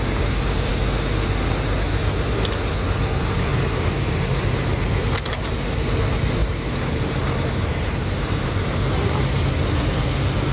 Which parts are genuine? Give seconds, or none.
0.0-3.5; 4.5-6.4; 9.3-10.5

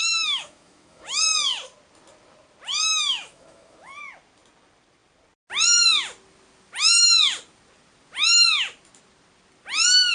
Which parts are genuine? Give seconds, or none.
1.2-2.9; 4.0-10.1

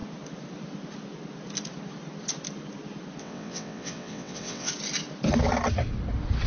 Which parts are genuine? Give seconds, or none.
0.0-3.2; 4.7-6.5

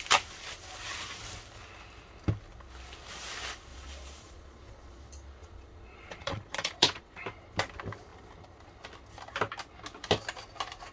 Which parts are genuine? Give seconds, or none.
0.0-3.7; 5.0-5.4; 7.1-10.9

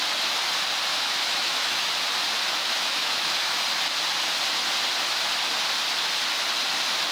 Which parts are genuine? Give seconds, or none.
0.0-0.9; 1.9-2.6; 3.6-7.1

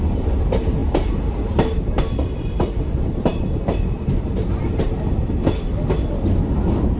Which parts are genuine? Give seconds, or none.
0.0-7.0